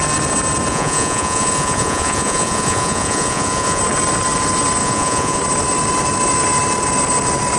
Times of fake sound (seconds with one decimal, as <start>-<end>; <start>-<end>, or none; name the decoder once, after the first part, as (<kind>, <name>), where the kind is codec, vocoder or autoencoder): 0.7-3.8 (vocoder, Vocos); 4.8-5.4